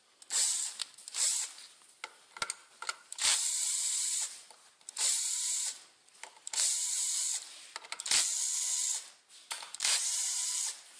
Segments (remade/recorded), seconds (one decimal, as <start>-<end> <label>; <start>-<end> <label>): 0.0-2.6 recorded; 2.6-7.3 remade; 7.3-9.4 recorded; 9.4-10.5 remade; 10.5-11.0 recorded